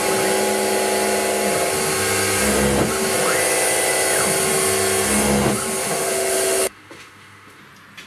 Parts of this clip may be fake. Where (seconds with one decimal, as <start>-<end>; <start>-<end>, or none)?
5.8-7.6